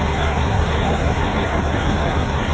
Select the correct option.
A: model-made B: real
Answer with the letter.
A